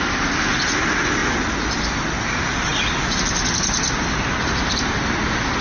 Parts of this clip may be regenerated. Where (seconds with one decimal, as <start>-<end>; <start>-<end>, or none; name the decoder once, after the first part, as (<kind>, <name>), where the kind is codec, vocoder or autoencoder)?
none